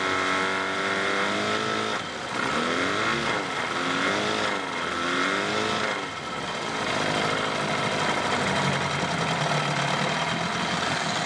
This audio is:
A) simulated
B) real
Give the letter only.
B